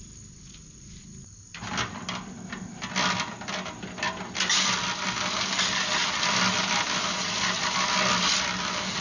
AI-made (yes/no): no